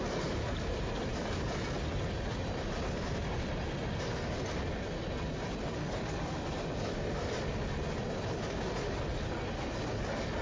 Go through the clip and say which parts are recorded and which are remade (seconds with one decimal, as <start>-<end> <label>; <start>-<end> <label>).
0.0-10.4 recorded